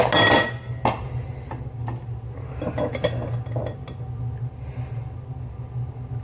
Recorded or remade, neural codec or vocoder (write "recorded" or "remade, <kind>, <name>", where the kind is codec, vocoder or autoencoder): recorded